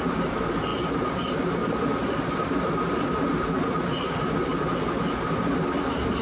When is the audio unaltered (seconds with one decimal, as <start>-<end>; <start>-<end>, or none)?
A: 0.0-6.2